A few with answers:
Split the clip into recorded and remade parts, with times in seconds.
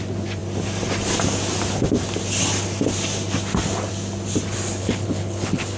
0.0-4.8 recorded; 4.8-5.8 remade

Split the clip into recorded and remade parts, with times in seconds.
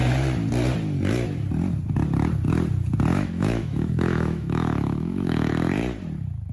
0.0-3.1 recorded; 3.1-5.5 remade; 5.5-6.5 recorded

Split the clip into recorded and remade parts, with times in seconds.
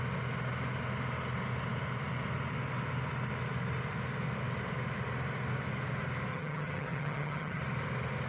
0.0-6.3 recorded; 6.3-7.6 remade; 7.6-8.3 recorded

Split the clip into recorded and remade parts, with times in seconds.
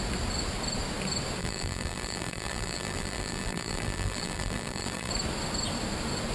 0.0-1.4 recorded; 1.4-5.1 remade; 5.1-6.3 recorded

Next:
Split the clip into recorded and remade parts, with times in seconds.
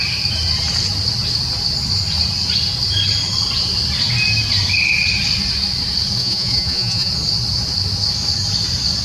0.0-6.2 recorded; 6.2-7.1 remade; 7.1-9.0 recorded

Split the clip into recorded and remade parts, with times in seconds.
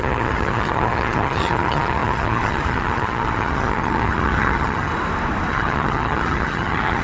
0.0-4.9 remade; 4.9-5.5 recorded; 5.5-7.0 remade